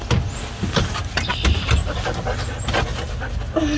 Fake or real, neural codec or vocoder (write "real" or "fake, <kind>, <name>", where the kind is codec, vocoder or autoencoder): real